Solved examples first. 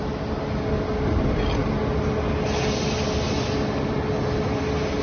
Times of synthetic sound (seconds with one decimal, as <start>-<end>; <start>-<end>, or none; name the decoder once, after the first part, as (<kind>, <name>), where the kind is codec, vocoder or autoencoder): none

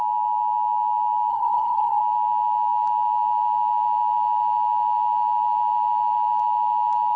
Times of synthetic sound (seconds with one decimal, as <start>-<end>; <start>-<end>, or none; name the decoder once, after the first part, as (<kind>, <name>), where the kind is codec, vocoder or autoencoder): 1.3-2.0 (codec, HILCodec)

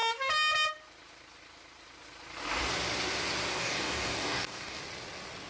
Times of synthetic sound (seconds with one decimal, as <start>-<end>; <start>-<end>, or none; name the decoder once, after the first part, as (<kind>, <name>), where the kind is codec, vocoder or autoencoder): 3.5-4.8 (codec, DAC)